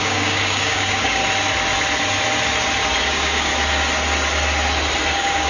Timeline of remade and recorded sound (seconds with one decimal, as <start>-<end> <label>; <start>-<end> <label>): 0.0-1.2 remade; 1.2-3.0 recorded; 3.0-3.5 remade; 3.5-5.1 recorded; 5.1-5.5 remade